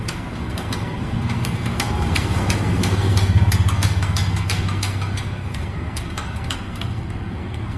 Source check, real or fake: fake